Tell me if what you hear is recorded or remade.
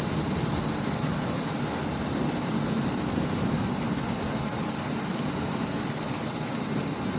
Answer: recorded